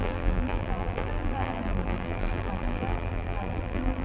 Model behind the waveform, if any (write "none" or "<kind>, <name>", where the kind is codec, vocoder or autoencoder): vocoder, BigVGAN v2